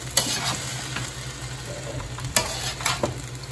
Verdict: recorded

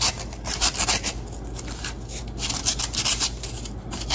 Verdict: recorded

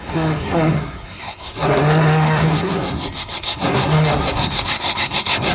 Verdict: remade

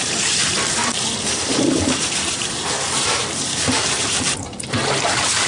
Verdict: remade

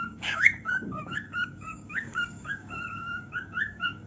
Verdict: remade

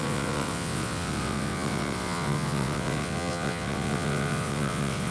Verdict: remade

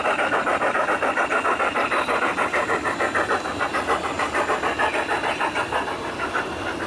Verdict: recorded